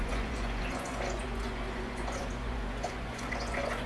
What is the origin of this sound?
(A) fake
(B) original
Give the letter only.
A